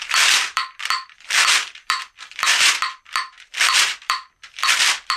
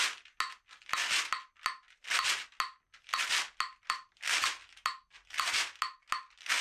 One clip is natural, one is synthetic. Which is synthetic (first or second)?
first